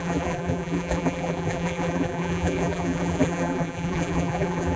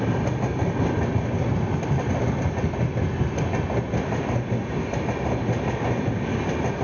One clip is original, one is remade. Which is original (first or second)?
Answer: second